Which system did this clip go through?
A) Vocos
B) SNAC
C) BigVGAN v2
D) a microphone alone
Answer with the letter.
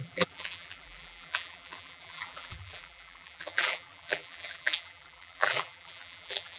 C